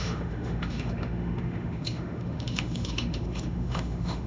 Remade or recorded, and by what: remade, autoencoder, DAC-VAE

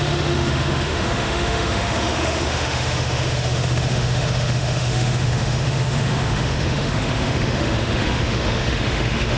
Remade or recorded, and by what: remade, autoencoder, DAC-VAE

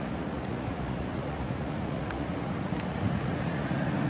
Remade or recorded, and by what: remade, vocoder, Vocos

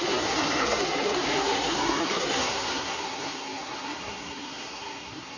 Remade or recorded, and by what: remade, codec, SNAC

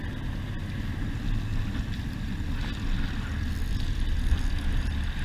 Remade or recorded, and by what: recorded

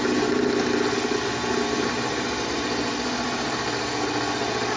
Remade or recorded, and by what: recorded